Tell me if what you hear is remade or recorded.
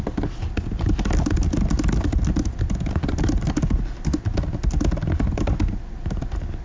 recorded